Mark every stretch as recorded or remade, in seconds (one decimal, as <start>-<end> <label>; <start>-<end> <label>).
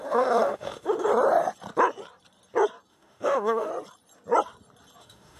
0.0-1.1 remade; 1.1-2.9 recorded; 2.9-3.7 remade; 3.7-5.0 recorded; 5.0-5.4 remade